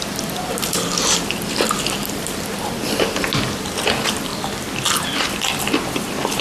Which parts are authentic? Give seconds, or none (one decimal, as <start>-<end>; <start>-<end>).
4.3-5.5

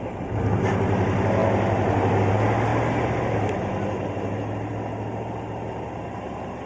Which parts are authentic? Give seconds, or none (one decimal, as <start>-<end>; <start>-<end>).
0.0-6.7